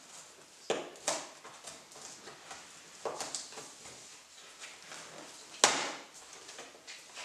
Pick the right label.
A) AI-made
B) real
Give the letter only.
B